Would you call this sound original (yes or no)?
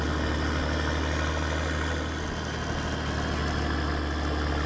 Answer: yes